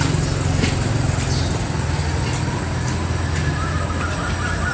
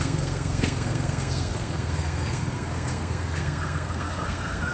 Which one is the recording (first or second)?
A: first